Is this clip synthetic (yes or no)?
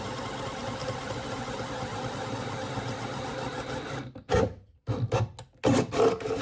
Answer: no